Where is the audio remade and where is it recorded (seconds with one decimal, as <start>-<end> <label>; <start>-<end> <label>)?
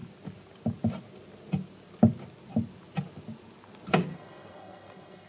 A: 0.0-4.1 recorded; 4.1-5.3 remade